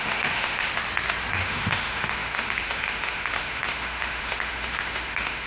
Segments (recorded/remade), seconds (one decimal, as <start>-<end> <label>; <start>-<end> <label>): 0.0-0.7 remade; 0.7-1.3 recorded; 1.3-5.5 remade